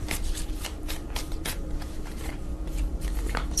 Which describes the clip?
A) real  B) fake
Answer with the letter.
B